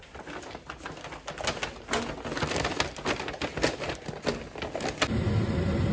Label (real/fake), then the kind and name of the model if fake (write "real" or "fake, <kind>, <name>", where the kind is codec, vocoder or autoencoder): real